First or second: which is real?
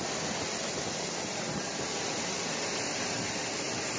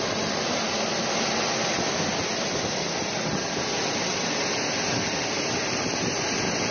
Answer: second